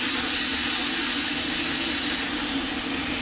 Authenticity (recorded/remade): recorded